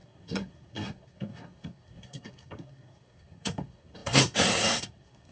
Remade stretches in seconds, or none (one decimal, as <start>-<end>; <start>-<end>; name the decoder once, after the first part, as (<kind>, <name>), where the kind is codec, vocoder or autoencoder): 0.0-5.3 (codec, SNAC)